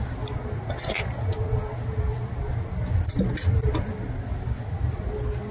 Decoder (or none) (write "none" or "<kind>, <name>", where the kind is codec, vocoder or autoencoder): none